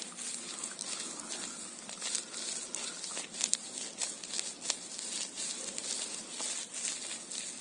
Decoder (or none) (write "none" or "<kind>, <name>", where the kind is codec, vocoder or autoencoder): none